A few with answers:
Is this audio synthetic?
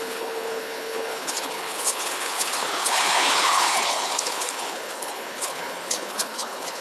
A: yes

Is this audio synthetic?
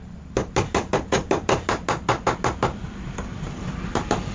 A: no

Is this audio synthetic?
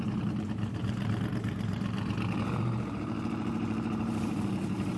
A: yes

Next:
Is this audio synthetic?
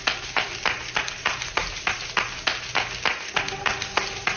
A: no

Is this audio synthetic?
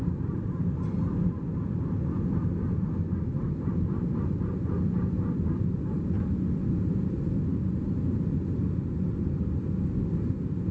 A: no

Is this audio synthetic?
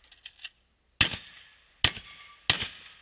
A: no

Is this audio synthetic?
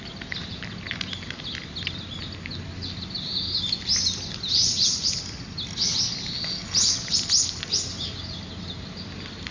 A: no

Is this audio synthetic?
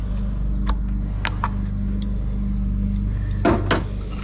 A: no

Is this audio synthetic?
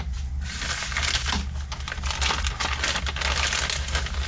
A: no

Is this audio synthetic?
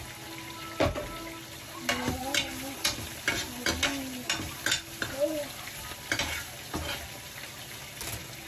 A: no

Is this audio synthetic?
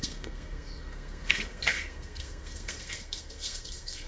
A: yes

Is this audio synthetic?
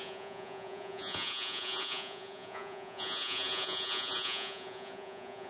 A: yes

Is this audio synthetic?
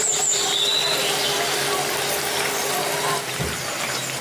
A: no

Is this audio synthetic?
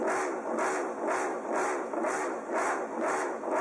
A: no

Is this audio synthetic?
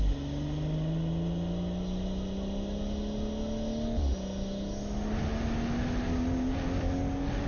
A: no